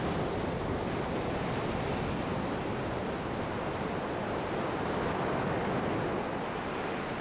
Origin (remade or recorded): recorded